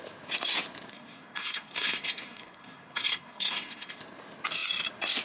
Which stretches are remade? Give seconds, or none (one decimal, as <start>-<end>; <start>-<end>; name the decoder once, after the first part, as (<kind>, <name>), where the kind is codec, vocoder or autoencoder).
0.9-4.0 (codec, SNAC)